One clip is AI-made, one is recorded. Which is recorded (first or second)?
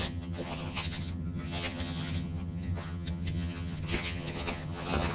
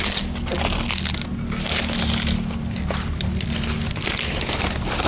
second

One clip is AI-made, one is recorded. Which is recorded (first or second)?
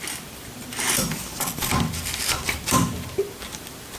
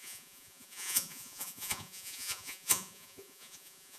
first